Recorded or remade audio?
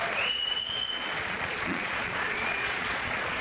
remade